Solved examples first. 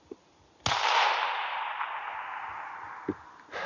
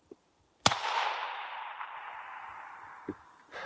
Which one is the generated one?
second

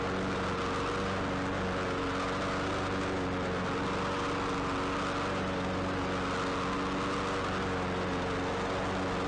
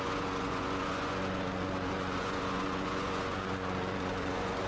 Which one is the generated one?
second